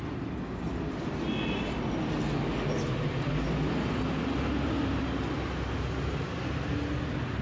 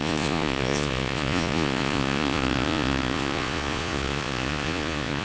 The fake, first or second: second